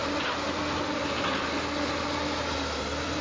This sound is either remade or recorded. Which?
recorded